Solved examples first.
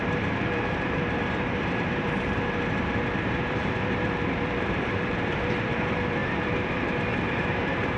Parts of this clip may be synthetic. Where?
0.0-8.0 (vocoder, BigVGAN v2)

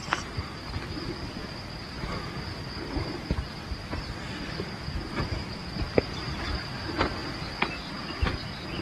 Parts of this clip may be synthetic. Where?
5.6-6.4 (vocoder, BigVGAN v2); 7.2-8.3

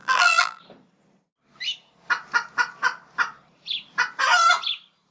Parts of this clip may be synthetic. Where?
0.0-0.6 (vocoder, BigVGAN v2)